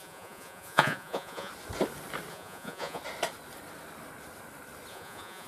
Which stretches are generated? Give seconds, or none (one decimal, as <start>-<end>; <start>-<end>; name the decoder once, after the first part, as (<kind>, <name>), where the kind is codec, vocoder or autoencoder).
0.0-1.5 (vocoder, Vocos); 2.3-3.0; 4.9-5.5